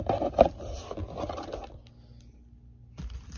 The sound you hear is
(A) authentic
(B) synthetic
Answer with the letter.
A